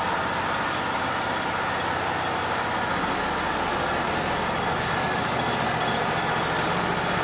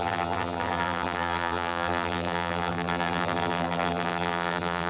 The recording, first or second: first